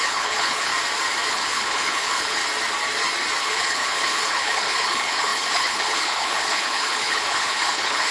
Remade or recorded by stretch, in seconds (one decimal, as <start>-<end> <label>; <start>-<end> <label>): 0.0-0.7 remade; 0.7-1.3 recorded; 1.3-2.4 remade; 2.4-3.4 recorded; 3.4-8.1 remade